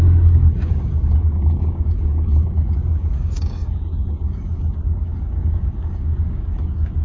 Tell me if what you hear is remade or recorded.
remade